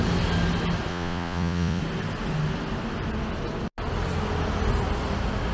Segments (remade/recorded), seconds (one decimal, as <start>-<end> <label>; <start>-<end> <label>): 0.0-0.9 recorded; 0.9-1.8 remade; 1.8-5.5 recorded